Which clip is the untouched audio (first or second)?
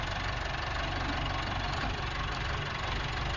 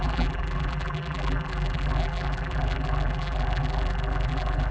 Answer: first